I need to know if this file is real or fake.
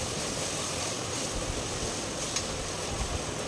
real